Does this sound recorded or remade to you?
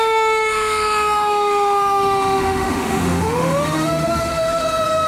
remade